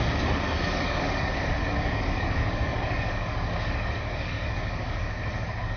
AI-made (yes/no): yes